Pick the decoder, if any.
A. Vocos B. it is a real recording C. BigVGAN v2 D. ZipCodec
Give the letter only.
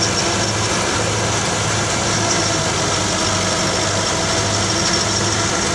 B